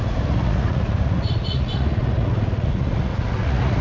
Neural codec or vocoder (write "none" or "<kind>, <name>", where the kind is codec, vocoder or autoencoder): vocoder, Vocos